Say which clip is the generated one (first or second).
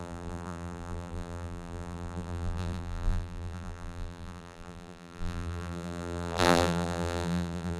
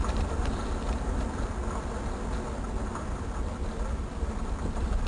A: first